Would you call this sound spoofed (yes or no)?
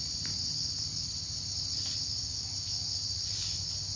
no